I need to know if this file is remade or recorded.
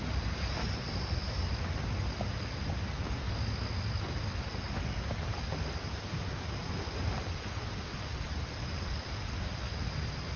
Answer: recorded